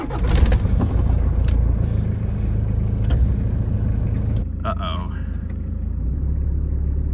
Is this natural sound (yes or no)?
yes